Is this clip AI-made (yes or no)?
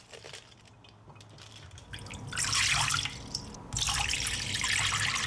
no